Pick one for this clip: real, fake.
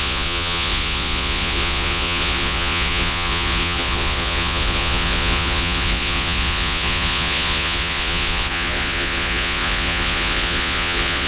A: fake